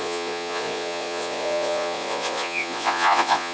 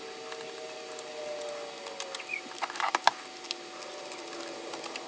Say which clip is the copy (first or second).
first